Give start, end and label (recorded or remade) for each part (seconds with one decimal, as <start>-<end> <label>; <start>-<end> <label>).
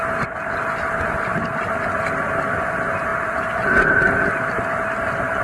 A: 0.0-5.4 recorded